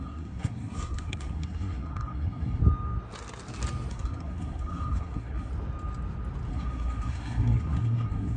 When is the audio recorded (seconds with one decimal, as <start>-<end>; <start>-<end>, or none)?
2.6-3.9; 5.5-6.5